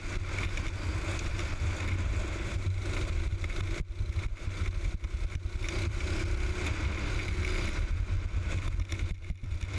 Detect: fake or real real